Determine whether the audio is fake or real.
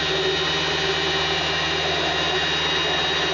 real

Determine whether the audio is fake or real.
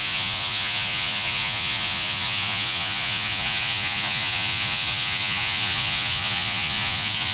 fake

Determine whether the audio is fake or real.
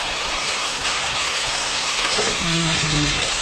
fake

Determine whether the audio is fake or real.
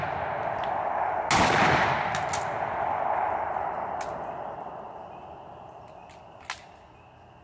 real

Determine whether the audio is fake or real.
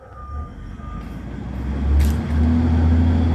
real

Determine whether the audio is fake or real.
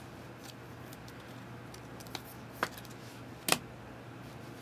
real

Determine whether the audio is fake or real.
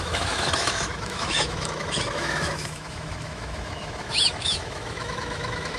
fake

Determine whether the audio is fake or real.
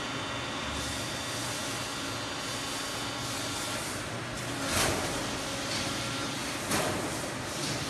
real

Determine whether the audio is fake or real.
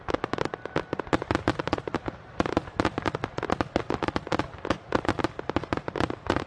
real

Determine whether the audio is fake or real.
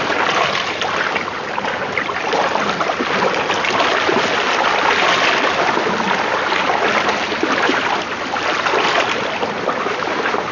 real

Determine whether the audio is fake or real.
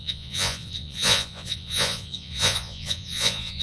fake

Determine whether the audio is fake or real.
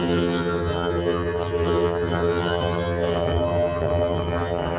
fake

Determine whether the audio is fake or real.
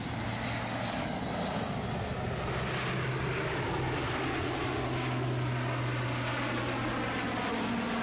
real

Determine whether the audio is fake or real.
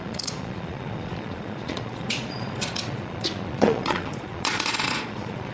fake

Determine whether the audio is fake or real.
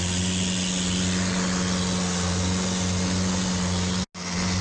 real